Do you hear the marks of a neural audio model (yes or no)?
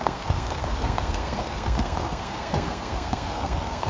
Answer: yes